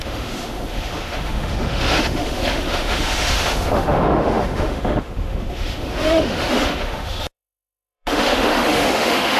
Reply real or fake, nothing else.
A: fake